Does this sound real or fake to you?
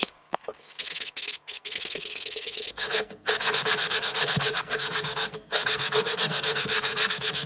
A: fake